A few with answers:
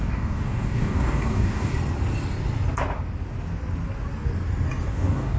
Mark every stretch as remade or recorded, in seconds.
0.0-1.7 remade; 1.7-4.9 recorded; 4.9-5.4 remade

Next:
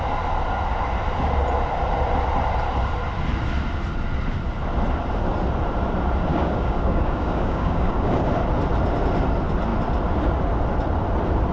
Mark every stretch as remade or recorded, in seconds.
0.0-6.3 recorded; 6.3-8.2 remade; 8.2-11.5 recorded

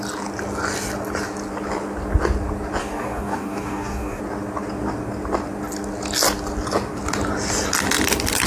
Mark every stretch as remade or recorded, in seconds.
0.0-2.8 recorded; 2.8-4.2 remade; 4.2-8.5 recorded

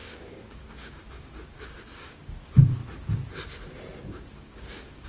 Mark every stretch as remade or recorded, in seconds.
0.0-2.8 remade; 2.8-4.0 recorded; 4.0-5.1 remade

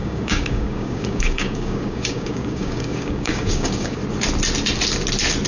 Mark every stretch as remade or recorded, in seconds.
0.0-4.0 remade; 4.0-5.5 recorded

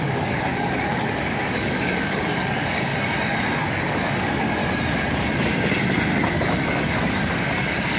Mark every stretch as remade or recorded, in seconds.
0.0-2.9 remade; 2.9-3.6 recorded; 3.6-4.6 remade; 4.6-6.3 recorded; 6.3-8.0 remade

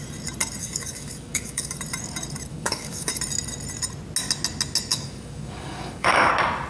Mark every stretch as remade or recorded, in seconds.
0.0-0.6 recorded; 0.6-1.8 remade; 1.8-2.5 recorded; 2.5-3.1 remade; 3.1-4.9 recorded; 4.9-6.3 remade; 6.3-6.7 recorded

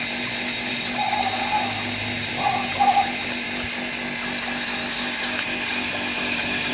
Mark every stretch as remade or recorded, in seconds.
0.0-0.7 recorded; 0.7-1.4 remade; 1.4-4.8 recorded; 4.8-6.7 remade